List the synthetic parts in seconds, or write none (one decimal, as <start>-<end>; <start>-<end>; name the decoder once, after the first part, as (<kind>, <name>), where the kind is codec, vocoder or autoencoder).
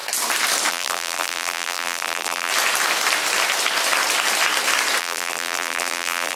0.7-2.5 (vocoder, BigVGAN v2); 5.0-6.4